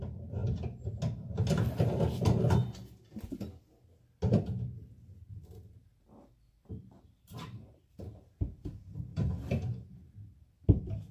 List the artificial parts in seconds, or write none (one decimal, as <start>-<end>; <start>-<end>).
5.4-8.3; 9.1-10.5